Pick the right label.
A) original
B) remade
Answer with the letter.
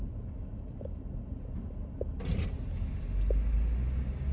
A